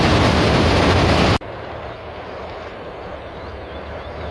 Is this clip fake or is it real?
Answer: real